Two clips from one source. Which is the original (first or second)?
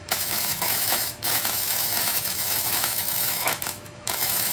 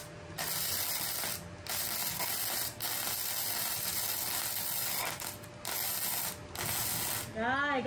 second